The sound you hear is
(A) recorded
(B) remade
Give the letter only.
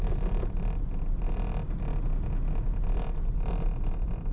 A